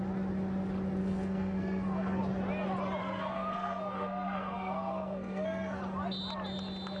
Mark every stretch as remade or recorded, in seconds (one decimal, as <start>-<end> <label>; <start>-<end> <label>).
0.0-1.0 recorded; 1.0-2.2 remade; 2.2-3.0 recorded; 3.0-5.8 remade; 5.8-7.0 recorded